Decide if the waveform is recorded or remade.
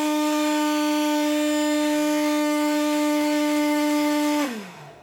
remade